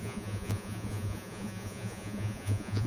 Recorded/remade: remade